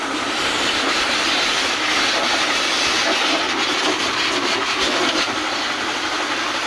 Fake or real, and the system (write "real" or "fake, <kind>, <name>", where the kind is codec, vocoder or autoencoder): real